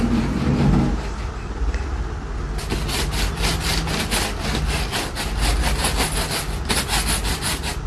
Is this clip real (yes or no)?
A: yes